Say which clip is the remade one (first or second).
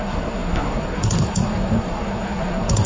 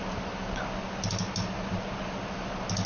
first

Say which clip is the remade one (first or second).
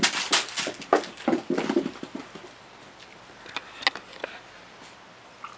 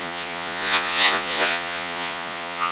second